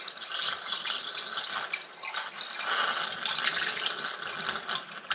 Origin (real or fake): real